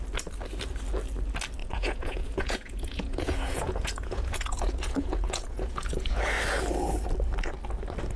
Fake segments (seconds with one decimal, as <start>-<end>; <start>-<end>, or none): 1.6-6.2